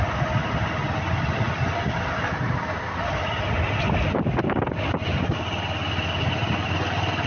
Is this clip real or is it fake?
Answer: real